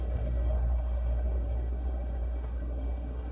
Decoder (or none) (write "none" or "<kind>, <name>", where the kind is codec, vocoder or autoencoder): codec, SNAC